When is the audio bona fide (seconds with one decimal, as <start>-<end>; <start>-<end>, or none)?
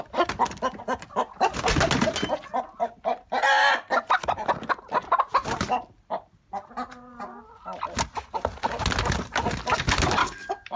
0.0-10.2